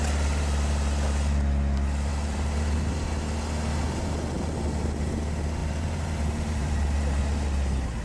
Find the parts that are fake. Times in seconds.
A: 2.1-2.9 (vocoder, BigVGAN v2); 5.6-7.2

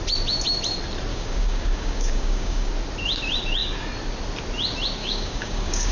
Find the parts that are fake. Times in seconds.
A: 1.1-2.7 (codec, DAC); 5.0-5.9

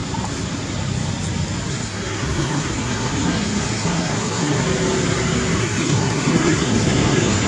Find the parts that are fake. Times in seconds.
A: 1.7-4.6 (codec, SNAC); 5.6-7.5

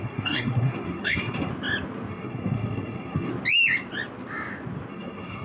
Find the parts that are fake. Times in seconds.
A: 0.0-1.5 (codec, SNAC); 2.1-3.3; 4.9-5.4

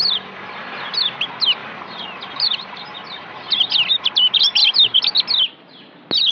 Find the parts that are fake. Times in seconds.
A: 1.6-3.9 (vocoder, BigVGAN v2)